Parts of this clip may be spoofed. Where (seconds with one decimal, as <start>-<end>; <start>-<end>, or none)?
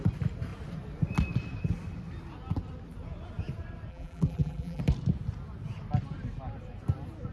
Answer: 3.9-4.8